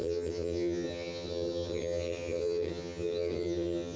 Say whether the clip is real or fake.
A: fake